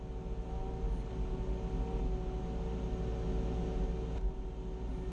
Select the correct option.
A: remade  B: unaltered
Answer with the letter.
B